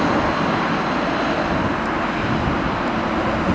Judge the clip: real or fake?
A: real